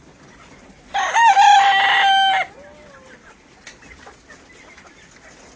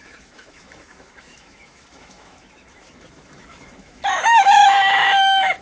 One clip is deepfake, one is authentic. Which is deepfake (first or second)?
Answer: second